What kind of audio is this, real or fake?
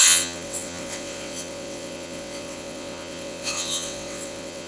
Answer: fake